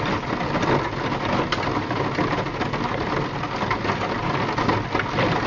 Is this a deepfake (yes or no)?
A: no